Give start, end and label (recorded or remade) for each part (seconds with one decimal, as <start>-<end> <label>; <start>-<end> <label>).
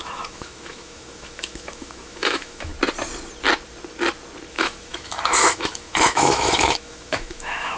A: 0.0-2.7 remade; 2.7-4.5 recorded; 4.5-7.8 remade